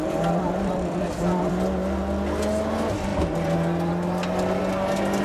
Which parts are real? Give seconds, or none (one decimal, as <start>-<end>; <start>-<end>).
1.5-5.2